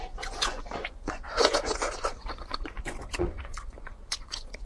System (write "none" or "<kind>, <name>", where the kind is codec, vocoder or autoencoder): vocoder, Vocos